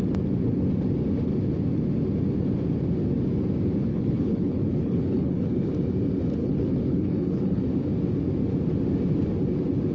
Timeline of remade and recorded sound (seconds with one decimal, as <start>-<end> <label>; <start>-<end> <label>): 0.0-3.9 recorded; 3.9-5.7 remade; 5.7-6.4 recorded; 6.4-7.6 remade; 7.6-9.9 recorded